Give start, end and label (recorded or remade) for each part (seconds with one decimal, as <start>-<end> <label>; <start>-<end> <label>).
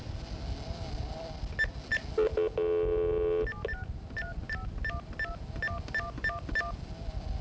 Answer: 0.0-7.4 recorded